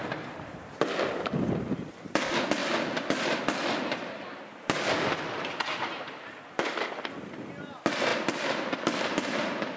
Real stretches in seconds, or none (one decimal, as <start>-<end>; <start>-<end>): 0.0-9.8